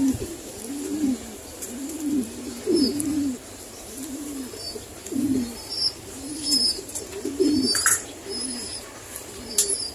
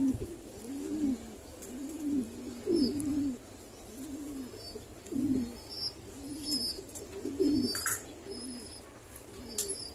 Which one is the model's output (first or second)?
first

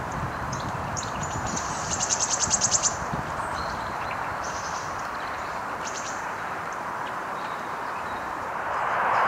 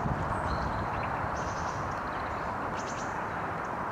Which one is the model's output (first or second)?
first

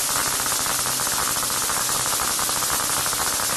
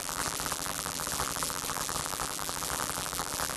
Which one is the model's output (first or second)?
second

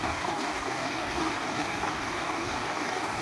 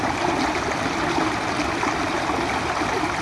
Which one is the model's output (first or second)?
first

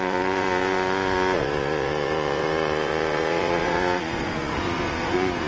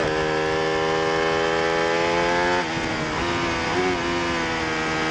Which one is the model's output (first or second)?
first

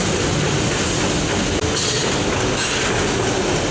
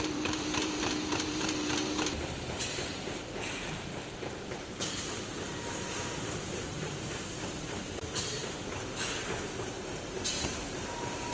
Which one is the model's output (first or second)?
second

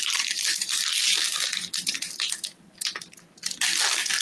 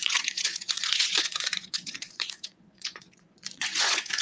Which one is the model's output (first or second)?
second